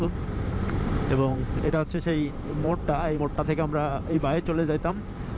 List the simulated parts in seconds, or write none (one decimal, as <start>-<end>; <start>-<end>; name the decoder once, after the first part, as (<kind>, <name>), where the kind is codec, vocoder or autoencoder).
0.0-3.2 (vocoder, BigVGAN v2); 3.9-4.9